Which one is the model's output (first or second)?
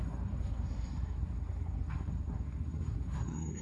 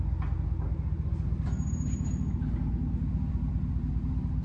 first